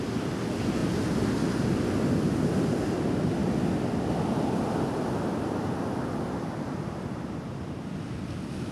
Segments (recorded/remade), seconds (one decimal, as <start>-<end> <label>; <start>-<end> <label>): 0.0-8.7 recorded